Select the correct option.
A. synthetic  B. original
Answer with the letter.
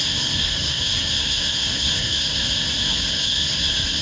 A